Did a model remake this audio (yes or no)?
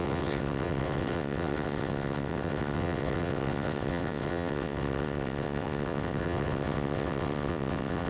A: yes